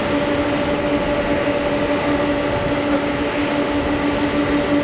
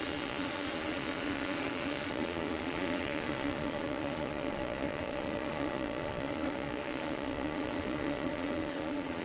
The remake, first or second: second